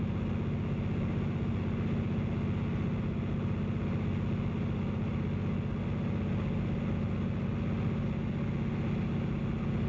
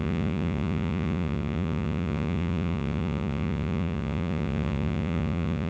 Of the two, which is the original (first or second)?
first